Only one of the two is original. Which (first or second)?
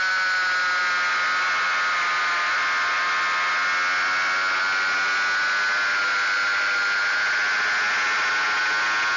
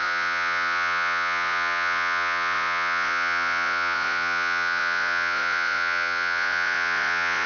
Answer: first